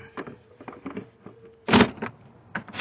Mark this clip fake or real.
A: real